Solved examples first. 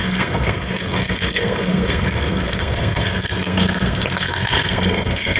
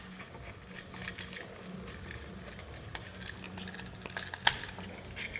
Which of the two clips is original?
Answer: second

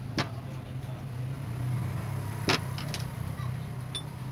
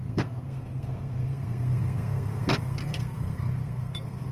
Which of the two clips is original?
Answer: first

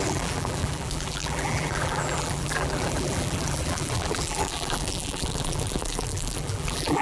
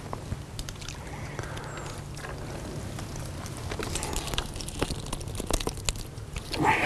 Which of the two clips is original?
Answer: second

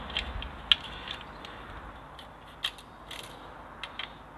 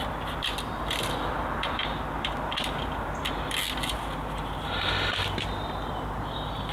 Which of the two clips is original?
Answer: first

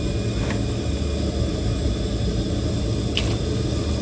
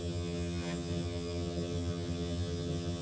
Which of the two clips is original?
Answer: first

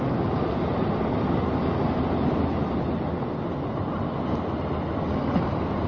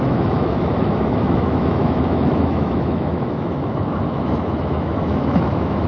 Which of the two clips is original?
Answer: first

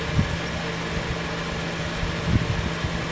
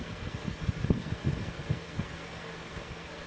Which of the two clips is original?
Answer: first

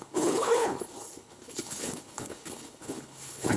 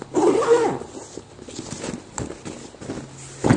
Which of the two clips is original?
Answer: second